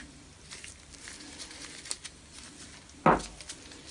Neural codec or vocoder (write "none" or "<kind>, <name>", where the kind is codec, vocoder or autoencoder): none